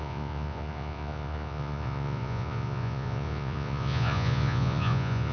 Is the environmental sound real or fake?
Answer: fake